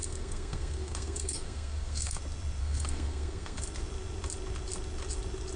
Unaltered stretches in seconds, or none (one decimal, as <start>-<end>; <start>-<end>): 2.2-2.6; 3.6-5.6